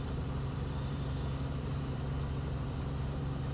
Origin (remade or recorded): remade